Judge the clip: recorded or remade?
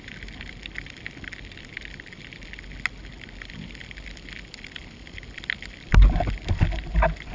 recorded